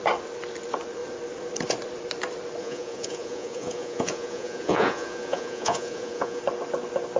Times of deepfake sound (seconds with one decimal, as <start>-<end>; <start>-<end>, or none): 2.6-6.4